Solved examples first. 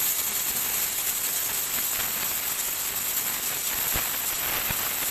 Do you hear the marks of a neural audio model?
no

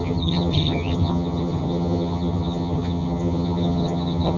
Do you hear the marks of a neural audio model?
yes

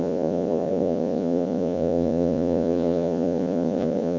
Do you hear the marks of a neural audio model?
yes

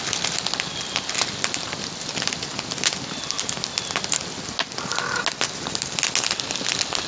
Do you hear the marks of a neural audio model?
no